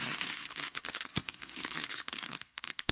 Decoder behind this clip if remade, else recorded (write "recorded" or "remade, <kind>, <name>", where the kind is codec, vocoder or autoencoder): remade, codec, SNAC